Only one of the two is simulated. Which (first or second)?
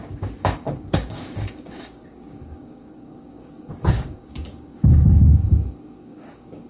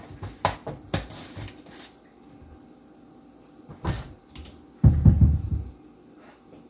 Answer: first